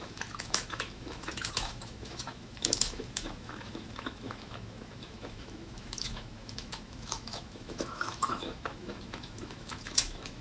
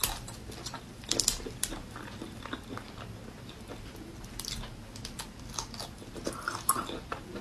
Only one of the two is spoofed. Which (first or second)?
first